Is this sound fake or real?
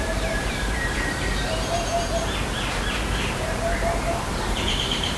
fake